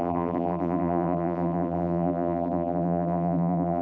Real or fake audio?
fake